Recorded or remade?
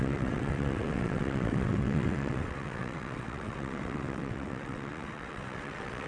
remade